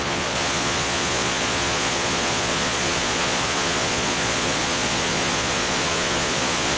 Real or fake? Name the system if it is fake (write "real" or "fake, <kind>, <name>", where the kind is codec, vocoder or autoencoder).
fake, vocoder, Vocos